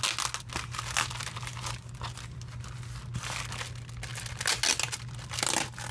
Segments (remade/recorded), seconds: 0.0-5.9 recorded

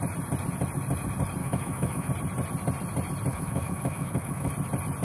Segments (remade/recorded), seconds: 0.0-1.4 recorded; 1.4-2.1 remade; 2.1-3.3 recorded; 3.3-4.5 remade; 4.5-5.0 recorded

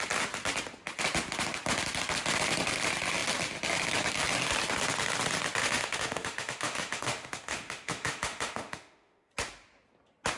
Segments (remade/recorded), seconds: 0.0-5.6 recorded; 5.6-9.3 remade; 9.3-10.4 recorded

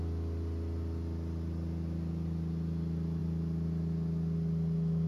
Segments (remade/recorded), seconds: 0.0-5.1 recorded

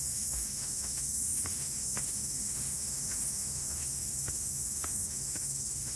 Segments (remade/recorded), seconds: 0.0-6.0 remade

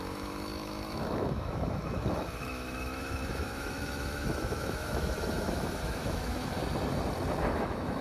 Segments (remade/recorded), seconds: 0.0-6.6 remade; 6.6-7.4 recorded; 7.4-8.0 remade

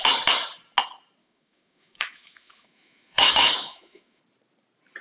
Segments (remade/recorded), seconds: 0.0-1.2 recorded; 1.2-4.2 remade; 4.2-5.0 recorded